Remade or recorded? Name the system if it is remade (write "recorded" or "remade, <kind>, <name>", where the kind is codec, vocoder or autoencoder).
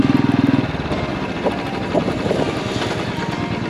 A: recorded